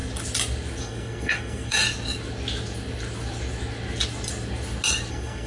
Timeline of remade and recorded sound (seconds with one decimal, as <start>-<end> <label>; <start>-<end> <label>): 0.0-0.8 recorded; 0.8-1.8 remade; 1.8-5.1 recorded; 5.1-5.5 remade